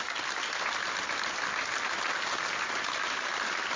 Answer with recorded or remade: recorded